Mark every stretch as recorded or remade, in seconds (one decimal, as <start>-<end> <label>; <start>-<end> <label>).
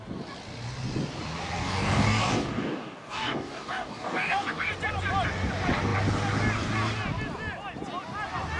0.0-1.6 recorded; 1.6-4.7 remade; 4.7-8.6 recorded